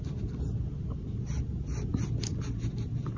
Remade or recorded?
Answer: recorded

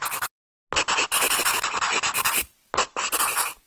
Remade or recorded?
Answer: recorded